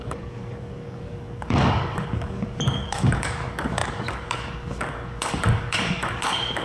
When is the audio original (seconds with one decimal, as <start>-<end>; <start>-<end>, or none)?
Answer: none